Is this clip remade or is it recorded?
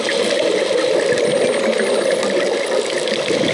recorded